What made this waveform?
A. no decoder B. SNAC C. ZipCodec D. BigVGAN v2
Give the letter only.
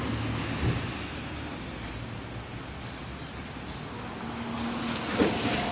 A